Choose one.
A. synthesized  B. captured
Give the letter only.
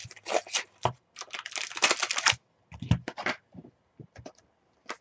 B